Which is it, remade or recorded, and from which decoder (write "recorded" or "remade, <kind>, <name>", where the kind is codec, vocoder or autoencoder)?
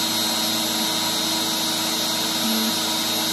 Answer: recorded